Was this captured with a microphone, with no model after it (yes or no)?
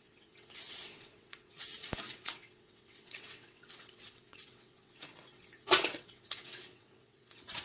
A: no